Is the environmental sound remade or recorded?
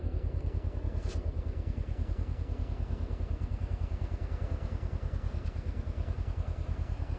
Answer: remade